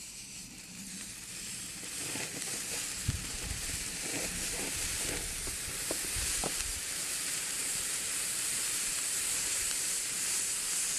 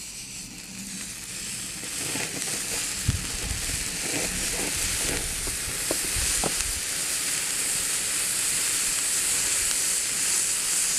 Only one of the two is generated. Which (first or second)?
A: first